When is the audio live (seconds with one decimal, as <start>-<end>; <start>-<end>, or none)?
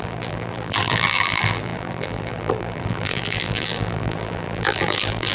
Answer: none